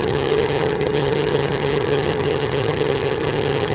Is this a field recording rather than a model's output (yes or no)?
no